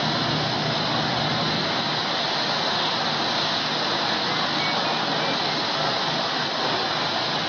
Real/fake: real